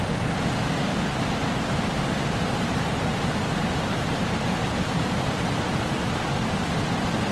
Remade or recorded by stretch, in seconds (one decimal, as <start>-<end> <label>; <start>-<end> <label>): 0.0-1.4 recorded; 1.4-5.8 remade; 5.8-7.3 recorded